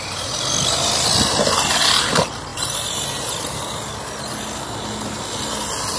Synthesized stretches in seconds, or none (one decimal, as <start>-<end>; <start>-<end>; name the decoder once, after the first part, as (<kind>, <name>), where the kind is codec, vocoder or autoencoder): none

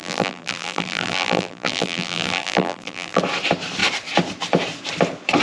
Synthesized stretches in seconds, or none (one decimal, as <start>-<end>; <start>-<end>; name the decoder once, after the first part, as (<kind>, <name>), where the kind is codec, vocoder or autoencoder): 0.0-3.2 (vocoder, BigVGAN v2)

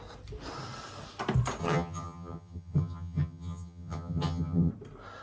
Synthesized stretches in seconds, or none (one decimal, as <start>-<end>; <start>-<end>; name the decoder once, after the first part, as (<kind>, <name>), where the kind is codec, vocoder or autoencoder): 1.6-4.7 (vocoder, HiFi-GAN)

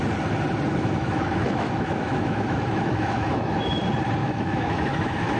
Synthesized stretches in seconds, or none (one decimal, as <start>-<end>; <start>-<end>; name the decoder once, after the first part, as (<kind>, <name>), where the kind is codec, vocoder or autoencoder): 0.7-3.8 (autoencoder, DAC-VAE); 4.2-5.4